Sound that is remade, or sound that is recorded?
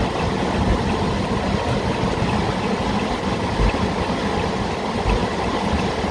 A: recorded